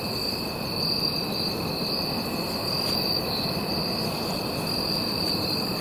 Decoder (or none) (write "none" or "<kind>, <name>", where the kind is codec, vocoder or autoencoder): none